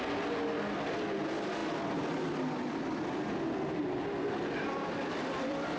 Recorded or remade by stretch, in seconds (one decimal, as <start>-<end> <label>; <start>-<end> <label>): 0.0-1.6 recorded; 1.6-2.7 remade; 2.7-3.8 recorded; 3.8-5.8 remade